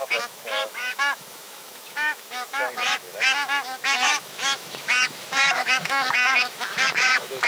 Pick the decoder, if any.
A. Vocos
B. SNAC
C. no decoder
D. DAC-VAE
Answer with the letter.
D